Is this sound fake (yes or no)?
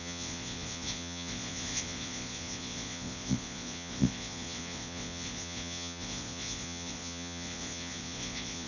yes